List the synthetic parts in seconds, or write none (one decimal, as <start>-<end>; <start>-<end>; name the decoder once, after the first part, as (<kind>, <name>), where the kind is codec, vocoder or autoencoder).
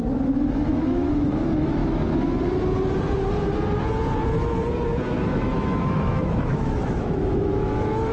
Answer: 0.0-1.8 (autoencoder, DAC-VAE); 5.1-8.1